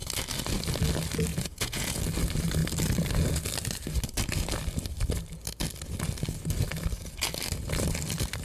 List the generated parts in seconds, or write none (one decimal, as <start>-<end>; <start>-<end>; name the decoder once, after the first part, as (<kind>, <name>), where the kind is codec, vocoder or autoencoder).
1.3-2.0 (vocoder, Vocos)